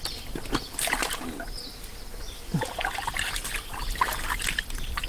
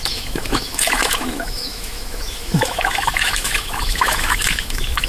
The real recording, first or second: first